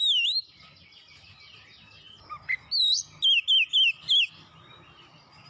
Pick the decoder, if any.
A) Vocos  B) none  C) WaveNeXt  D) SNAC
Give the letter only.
B